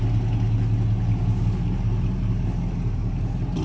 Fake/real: real